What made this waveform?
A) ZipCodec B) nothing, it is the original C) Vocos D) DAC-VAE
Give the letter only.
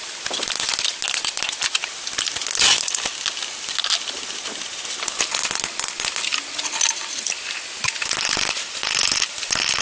B